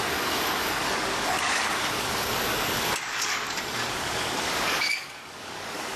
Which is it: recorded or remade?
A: remade